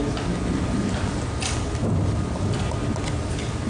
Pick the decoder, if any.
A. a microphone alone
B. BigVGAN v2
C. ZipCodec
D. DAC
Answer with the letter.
A